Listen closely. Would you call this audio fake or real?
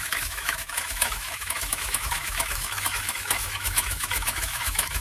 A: fake